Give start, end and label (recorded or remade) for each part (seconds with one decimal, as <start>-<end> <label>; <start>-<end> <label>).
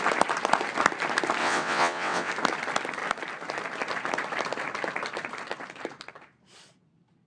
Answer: 0.0-1.4 recorded; 1.4-2.3 remade; 2.3-7.3 recorded